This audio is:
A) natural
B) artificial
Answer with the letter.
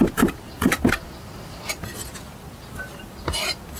A